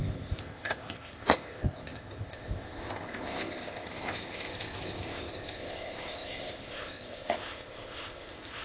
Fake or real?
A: fake